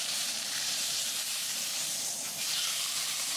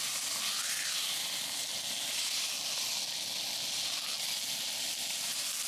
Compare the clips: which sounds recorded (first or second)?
second